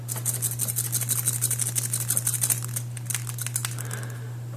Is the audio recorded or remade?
recorded